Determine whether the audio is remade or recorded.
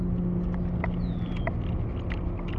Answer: recorded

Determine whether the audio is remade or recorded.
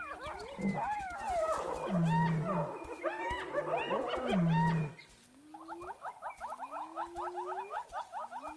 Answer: recorded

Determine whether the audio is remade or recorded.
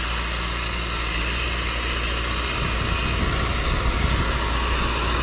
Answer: recorded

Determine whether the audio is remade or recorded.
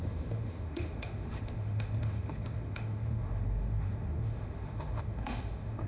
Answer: remade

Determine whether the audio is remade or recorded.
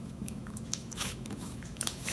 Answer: remade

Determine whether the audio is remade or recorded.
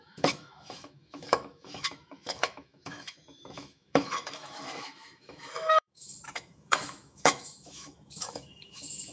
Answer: remade